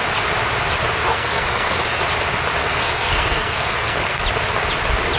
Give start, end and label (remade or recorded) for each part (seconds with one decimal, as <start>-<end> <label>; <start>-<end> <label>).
0.0-1.1 recorded; 1.1-1.8 remade; 1.8-2.6 recorded; 2.6-4.2 remade; 4.2-5.2 recorded